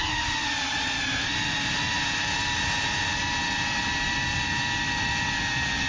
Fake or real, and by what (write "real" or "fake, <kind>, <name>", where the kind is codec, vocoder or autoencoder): real